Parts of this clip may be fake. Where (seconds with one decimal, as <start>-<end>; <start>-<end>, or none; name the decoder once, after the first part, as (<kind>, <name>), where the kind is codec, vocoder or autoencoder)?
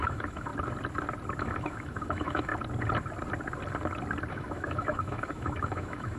0.0-0.5 (autoencoder, DAC-VAE); 1.4-2.5; 4.3-6.2